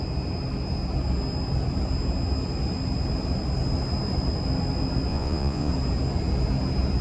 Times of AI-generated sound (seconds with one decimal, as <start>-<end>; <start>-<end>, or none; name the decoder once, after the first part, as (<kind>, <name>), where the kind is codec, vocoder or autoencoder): 5.1-5.7 (vocoder, Vocos)